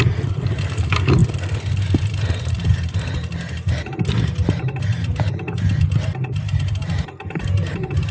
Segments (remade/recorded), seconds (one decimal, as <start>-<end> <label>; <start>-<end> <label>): 0.0-8.1 recorded